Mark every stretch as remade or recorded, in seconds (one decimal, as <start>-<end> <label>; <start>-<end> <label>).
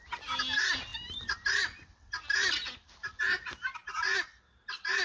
0.0-5.0 recorded